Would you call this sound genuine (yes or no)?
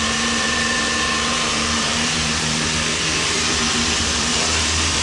no